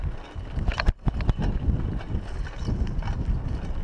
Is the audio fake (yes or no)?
no